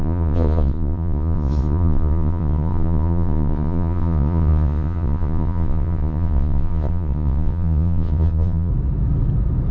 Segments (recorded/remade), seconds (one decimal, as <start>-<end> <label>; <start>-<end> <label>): 0.0-8.7 remade; 8.7-9.7 recorded